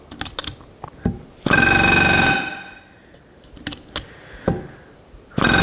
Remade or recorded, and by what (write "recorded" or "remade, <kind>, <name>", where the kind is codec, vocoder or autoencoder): recorded